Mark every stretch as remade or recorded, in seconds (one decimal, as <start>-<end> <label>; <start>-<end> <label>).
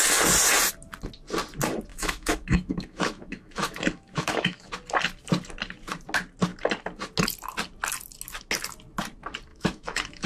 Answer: 0.0-1.9 recorded; 1.9-4.7 remade; 4.7-9.5 recorded; 9.5-10.3 remade